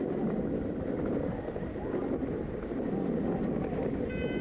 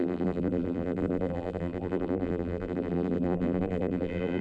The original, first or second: first